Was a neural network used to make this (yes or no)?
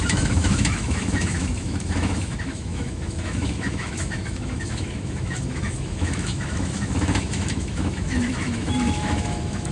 yes